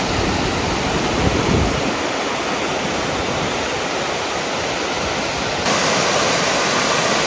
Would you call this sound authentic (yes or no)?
yes